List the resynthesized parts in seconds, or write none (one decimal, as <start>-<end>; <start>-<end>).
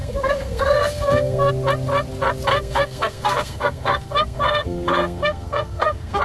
0.0-1.5; 2.5-6.2